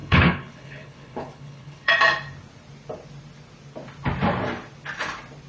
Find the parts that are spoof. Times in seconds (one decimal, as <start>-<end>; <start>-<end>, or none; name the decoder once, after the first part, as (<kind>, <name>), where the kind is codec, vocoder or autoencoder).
0.0-1.9 (codec, HILCodec)